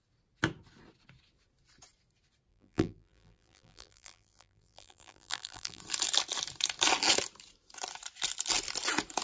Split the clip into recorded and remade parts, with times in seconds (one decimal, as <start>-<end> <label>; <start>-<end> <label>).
0.0-2.5 recorded; 2.5-5.8 remade; 5.8-9.2 recorded